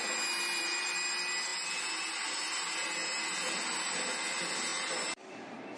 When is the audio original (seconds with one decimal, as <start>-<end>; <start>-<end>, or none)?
0.0-5.8